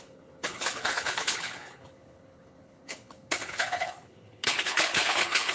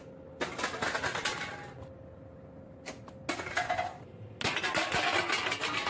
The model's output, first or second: first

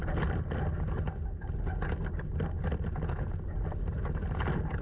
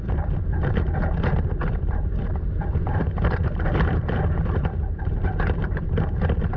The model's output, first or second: second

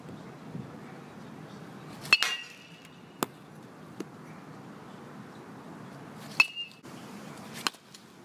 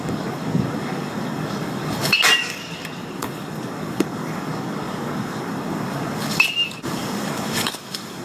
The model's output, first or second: second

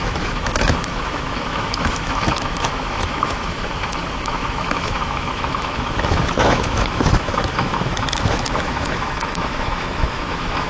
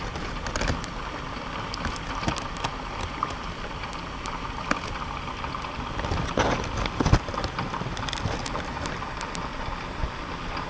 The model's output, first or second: first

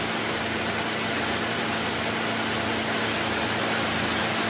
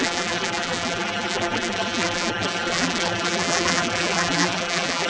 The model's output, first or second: second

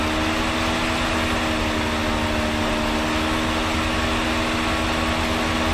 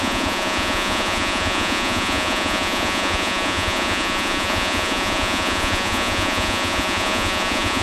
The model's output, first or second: second